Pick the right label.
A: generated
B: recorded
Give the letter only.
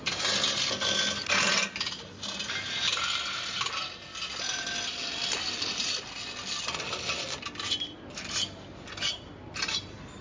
B